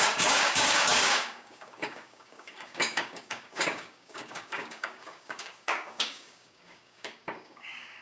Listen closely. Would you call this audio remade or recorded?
remade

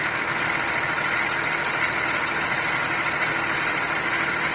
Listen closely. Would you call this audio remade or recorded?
recorded